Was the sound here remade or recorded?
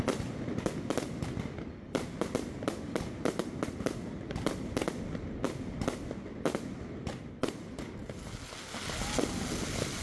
recorded